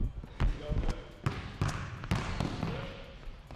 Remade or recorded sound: recorded